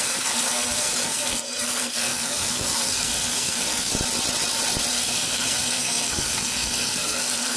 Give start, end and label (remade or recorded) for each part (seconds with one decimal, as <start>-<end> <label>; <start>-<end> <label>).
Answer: 0.0-3.9 remade; 3.9-4.9 recorded; 4.9-7.6 remade